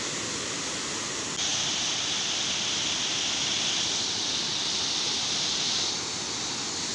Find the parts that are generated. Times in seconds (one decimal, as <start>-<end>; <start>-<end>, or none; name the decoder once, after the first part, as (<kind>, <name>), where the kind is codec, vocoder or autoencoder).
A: none